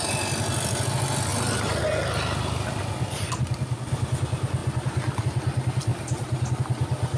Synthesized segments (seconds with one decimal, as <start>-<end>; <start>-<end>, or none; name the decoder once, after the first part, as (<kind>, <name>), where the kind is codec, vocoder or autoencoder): none